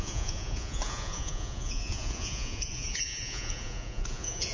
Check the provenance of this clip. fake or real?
fake